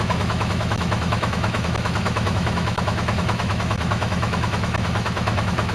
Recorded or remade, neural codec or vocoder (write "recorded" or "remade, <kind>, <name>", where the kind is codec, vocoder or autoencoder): remade, autoencoder, DAC-VAE